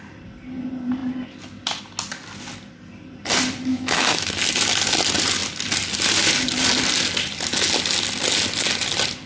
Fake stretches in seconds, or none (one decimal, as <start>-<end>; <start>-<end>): 3.7-4.4